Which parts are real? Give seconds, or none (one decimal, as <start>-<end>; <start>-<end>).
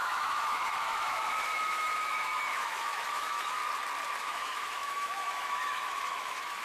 3.6-4.2